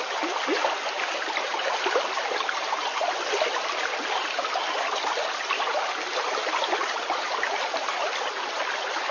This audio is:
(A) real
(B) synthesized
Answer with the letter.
A